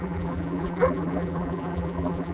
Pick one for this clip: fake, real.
fake